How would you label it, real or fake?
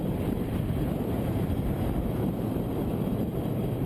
fake